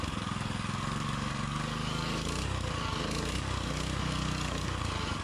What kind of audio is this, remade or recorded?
remade